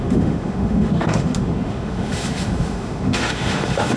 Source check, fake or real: fake